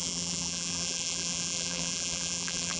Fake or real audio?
fake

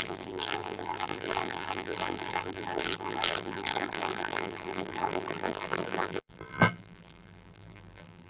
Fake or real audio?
fake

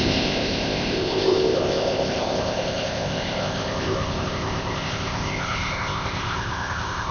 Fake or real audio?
fake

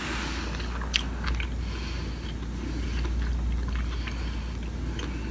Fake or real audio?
real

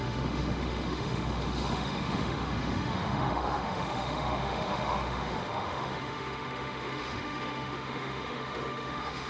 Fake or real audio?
fake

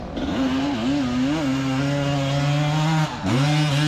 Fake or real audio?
real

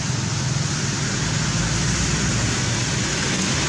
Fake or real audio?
real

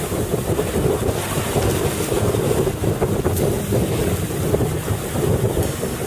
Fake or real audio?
real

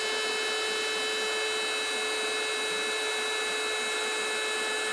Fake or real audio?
real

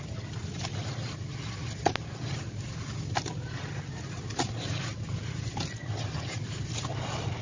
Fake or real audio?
real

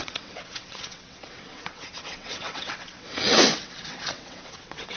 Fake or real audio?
fake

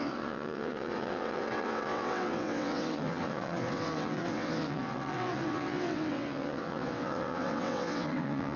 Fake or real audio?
fake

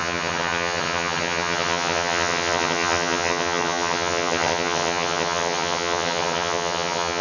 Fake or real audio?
fake